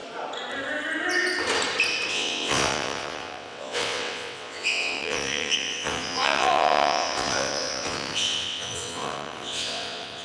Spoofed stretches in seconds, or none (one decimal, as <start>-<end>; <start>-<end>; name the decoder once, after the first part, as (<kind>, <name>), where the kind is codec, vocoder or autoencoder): 2.1-10.2 (vocoder, WaveNeXt)